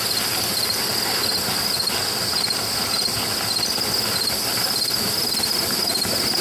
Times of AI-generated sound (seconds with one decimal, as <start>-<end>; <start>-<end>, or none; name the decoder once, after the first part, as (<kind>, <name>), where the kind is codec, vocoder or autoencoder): none